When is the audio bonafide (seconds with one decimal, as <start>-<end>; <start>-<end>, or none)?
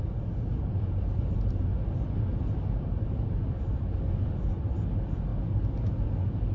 0.0-2.3; 4.4-5.3; 5.9-6.5